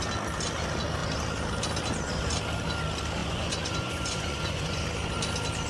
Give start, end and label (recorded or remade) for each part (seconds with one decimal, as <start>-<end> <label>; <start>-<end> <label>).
0.0-3.2 recorded; 3.2-4.8 remade; 4.8-5.7 recorded